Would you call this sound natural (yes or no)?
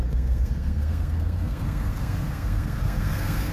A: no